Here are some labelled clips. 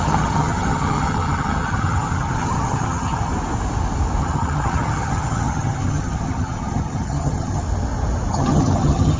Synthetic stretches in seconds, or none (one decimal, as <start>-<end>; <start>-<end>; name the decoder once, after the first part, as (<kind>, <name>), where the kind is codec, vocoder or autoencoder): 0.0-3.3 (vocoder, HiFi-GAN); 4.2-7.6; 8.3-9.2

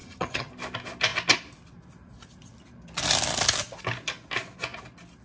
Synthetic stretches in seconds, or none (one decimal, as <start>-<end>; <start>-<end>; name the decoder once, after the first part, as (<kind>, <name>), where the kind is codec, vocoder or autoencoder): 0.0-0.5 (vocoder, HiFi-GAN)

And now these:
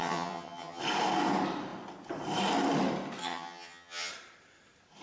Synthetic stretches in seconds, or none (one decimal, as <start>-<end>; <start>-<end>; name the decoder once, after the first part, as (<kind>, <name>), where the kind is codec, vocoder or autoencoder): 0.0-0.8 (vocoder, HiFi-GAN); 3.2-4.1

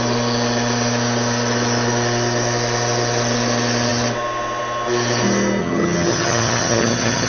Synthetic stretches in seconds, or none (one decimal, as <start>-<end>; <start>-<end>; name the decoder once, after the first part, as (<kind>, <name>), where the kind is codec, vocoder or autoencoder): 5.6-7.3 (vocoder, HiFi-GAN)

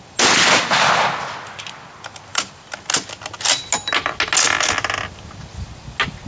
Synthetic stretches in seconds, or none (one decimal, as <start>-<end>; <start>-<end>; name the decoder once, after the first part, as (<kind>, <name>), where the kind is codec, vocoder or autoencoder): none